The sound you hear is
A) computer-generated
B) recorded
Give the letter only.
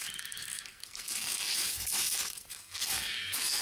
A